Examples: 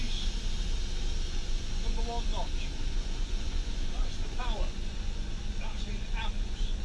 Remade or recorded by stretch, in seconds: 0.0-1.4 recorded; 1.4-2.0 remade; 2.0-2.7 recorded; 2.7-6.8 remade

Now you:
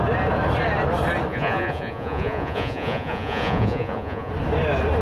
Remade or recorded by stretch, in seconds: 0.0-1.3 recorded; 1.3-4.3 remade; 4.3-5.0 recorded